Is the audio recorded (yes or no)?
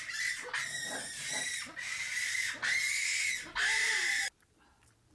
yes